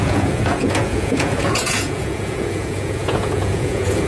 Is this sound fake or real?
fake